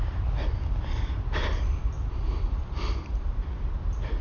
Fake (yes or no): yes